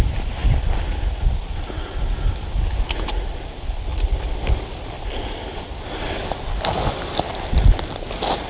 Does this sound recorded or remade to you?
recorded